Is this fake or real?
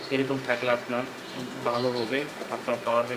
fake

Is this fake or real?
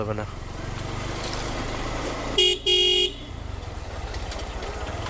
real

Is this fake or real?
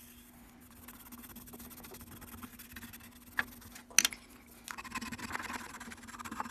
real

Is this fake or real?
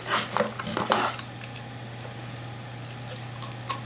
real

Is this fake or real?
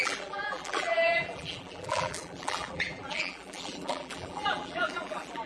fake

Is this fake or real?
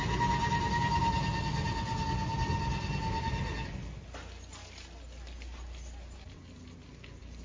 real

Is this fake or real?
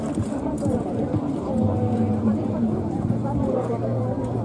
fake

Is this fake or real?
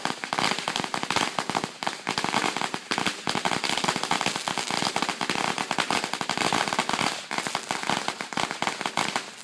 real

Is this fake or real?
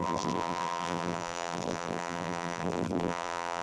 fake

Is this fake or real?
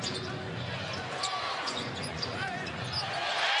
fake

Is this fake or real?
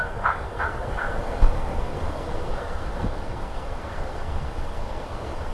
fake